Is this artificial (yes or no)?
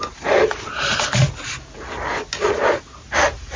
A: no